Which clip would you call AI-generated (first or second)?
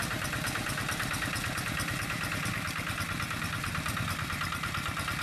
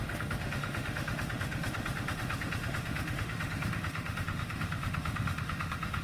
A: second